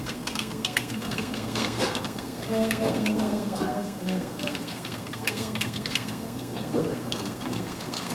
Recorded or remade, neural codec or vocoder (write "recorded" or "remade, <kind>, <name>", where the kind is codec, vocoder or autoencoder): remade, codec, SNAC